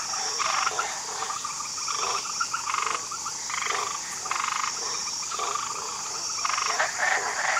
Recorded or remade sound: recorded